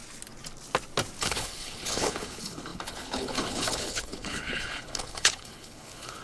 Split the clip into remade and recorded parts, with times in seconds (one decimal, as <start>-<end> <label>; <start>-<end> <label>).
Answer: 0.0-1.2 recorded; 1.2-6.2 remade